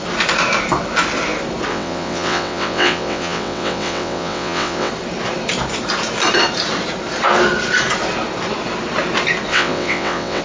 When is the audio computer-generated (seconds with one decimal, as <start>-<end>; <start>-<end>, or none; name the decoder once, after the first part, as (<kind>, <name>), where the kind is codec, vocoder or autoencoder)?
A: 1.7-4.9 (vocoder, WaveNeXt); 9.5-10.4